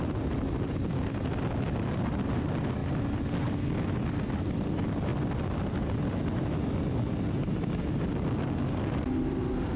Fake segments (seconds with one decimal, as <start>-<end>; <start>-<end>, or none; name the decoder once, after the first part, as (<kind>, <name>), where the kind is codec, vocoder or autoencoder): none